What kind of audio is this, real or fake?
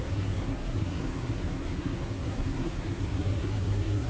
fake